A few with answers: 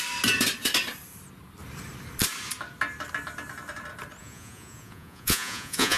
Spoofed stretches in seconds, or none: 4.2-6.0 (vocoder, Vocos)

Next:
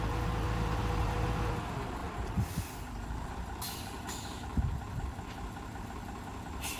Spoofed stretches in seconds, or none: none

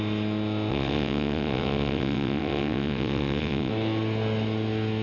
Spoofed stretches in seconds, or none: 0.7-3.7 (vocoder, WaveNeXt)

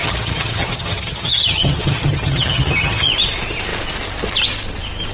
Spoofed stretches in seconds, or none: 0.0-3.1 (vocoder, HiFi-GAN)

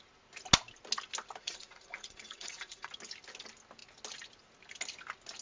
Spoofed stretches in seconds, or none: 1.4-2.9 (vocoder, Vocos)

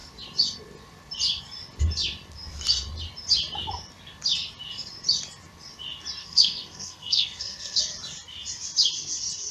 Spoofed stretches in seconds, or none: 6.2-7.8 (codec, SNAC)

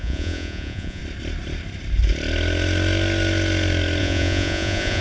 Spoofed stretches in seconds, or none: 0.0-1.0 (vocoder, Vocos); 4.0-5.0